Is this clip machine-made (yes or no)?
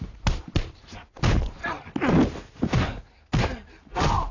no